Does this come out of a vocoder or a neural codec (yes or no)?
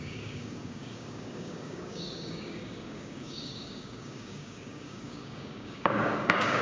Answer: yes